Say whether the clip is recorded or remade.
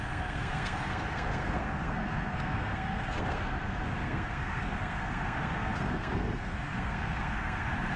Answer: remade